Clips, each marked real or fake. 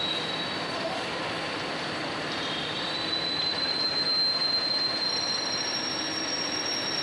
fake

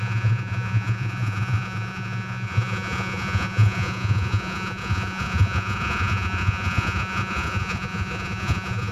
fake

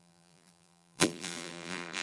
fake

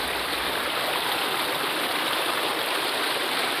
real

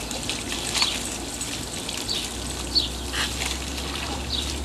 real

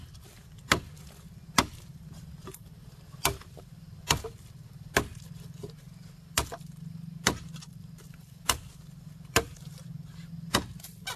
real